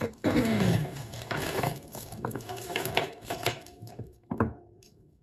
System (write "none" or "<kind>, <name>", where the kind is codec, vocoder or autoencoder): codec, DAC